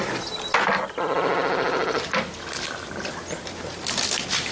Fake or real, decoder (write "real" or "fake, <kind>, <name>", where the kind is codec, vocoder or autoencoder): real